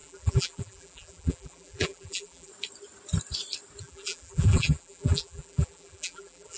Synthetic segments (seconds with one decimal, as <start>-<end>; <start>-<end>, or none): 0.0-2.5; 3.8-6.6